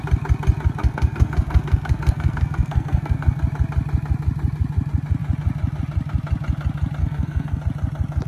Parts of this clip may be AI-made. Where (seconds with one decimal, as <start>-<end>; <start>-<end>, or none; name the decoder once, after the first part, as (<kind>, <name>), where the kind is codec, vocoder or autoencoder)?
0.8-3.4 (codec, SNAC); 7.0-7.6